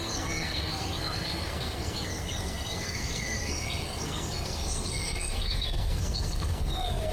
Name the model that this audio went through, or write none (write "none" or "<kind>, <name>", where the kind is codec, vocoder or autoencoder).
codec, SNAC